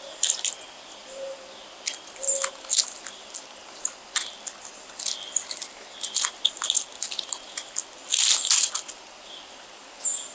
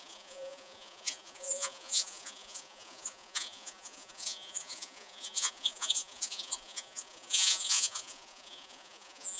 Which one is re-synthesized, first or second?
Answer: second